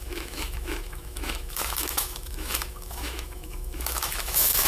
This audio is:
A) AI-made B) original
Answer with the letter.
A